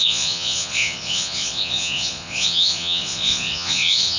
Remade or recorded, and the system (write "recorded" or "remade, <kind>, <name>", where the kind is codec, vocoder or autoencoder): remade, vocoder, Vocos